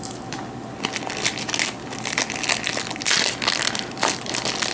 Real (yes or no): yes